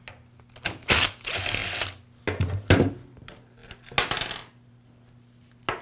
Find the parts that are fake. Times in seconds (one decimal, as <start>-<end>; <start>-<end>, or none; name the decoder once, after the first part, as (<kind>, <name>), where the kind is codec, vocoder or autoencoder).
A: none